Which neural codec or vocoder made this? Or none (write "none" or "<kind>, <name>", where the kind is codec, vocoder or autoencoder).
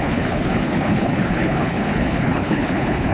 codec, HILCodec